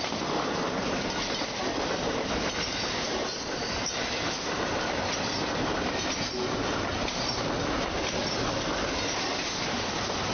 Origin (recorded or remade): recorded